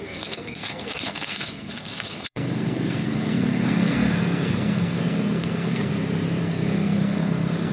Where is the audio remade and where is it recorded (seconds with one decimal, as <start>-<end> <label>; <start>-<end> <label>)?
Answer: 0.0-5.9 remade; 5.9-6.4 recorded; 6.4-7.7 remade